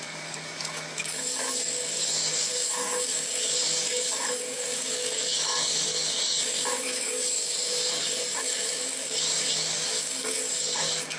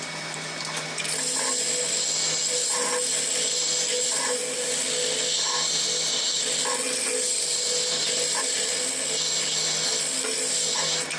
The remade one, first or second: first